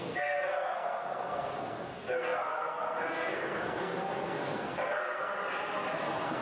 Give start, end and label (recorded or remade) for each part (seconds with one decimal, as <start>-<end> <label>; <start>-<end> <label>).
0.0-5.3 remade; 5.3-6.0 recorded; 6.0-6.4 remade